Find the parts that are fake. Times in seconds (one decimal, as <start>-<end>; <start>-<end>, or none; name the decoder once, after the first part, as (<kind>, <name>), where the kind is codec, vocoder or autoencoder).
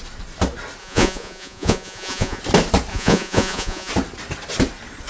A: 0.8-2.4 (vocoder, Vocos); 2.9-3.9